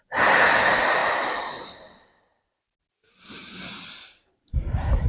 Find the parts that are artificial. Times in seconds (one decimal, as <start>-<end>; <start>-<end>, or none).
3.4-5.1